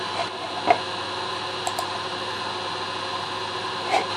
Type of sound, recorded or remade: recorded